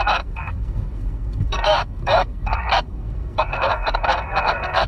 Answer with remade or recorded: remade